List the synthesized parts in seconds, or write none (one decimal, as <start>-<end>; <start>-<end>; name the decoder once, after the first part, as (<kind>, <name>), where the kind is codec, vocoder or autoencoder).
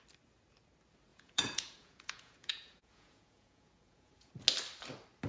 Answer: 1.1-4.3 (vocoder, Vocos)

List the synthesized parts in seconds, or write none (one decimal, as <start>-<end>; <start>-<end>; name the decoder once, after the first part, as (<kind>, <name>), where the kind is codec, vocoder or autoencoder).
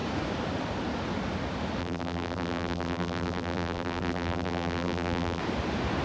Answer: 1.8-5.4 (vocoder, BigVGAN v2)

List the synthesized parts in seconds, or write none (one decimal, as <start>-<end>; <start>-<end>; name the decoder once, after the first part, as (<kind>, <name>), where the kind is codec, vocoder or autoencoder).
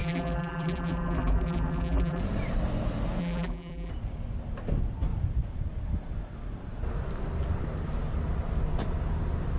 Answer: 0.0-2.2 (vocoder, BigVGAN v2); 3.2-3.9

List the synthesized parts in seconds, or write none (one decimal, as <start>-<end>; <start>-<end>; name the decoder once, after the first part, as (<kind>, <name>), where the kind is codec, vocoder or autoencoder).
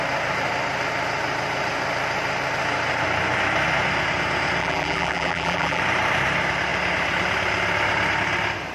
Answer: 4.6-5.8 (vocoder, BigVGAN v2)